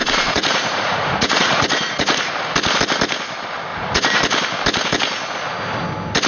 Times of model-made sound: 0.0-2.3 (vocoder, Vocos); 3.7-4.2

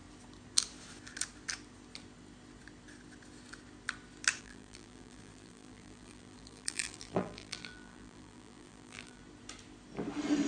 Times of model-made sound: 4.4-9.2 (vocoder, BigVGAN v2)

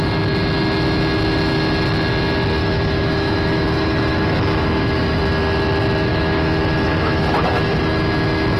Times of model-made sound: 2.6-5.2 (autoencoder, DAC-VAE); 6.1-7.8

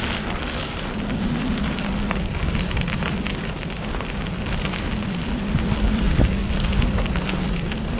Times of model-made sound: none

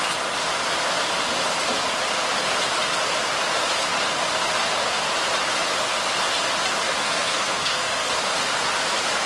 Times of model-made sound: 7.0-8.1 (codec, SNAC)

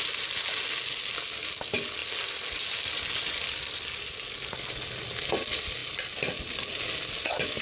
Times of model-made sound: none

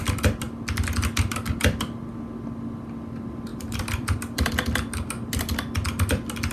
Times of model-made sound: 3.5-4.5 (vocoder, BigVGAN v2)